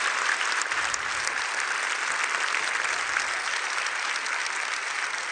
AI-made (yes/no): no